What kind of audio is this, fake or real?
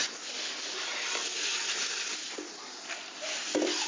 real